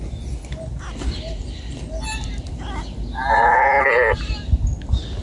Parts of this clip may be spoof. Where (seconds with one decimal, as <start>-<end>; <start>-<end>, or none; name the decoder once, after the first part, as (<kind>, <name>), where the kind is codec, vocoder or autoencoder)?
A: 2.2-2.8 (vocoder, BigVGAN v2)

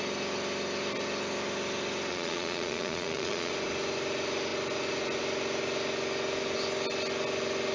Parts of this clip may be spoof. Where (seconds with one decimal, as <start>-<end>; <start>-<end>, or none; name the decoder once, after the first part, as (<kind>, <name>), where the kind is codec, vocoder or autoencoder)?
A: 2.1-3.5 (vocoder, Vocos)